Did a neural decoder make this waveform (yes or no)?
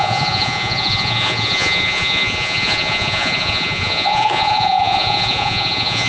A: yes